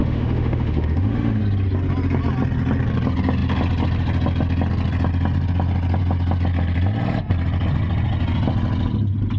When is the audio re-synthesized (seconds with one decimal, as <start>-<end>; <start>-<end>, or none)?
0.0-1.4